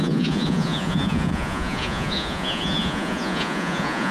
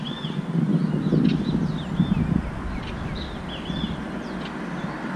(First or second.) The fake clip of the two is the first